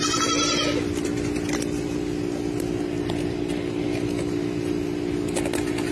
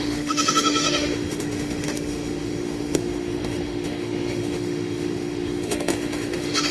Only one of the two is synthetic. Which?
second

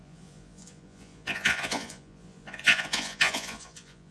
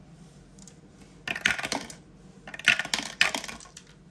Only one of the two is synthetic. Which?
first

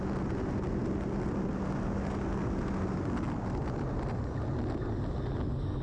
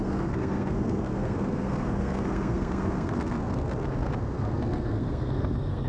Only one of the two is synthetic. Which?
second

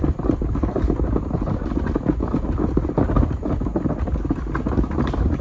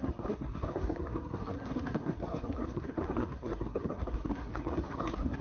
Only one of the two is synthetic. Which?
second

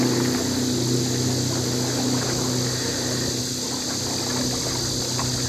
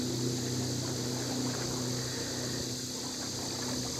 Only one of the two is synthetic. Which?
second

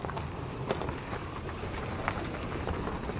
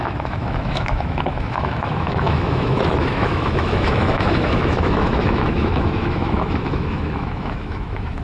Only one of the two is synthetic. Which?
second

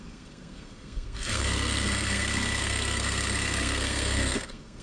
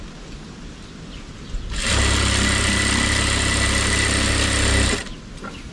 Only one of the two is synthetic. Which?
first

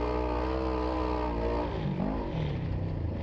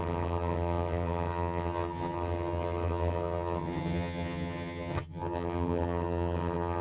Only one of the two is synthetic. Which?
second